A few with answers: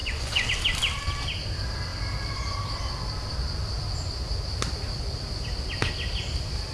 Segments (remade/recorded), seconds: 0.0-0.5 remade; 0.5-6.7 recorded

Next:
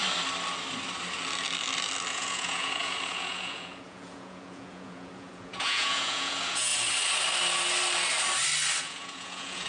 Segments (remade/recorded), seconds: 0.0-2.1 recorded; 2.1-6.7 remade; 6.7-8.8 recorded; 8.8-9.7 remade

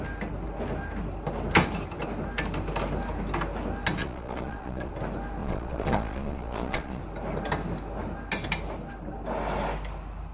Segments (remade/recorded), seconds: 0.0-4.0 recorded; 4.0-4.9 remade; 4.9-5.4 recorded; 5.4-7.0 remade; 7.0-10.3 recorded

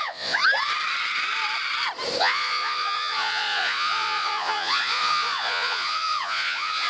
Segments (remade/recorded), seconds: 0.0-0.4 remade; 0.4-2.2 recorded; 2.2-6.9 remade

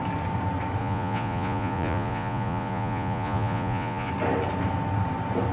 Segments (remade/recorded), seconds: 0.0-0.8 recorded; 0.8-4.1 remade; 4.1-5.5 recorded

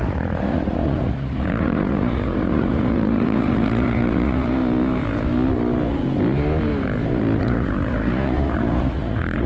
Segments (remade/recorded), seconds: 0.0-4.6 remade; 4.6-7.4 recorded; 7.4-9.5 remade

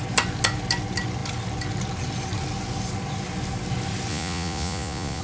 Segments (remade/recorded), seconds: 0.0-4.1 recorded; 4.1-5.2 remade